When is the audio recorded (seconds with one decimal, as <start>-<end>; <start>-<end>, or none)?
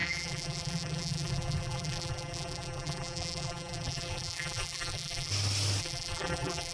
5.3-5.8